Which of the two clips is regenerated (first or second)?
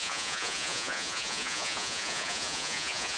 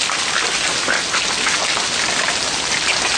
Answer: first